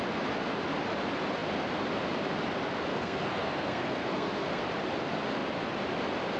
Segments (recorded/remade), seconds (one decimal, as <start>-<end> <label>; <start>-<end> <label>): 0.0-2.9 recorded; 2.9-4.6 remade; 4.6-6.4 recorded